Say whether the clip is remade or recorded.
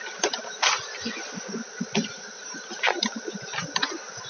recorded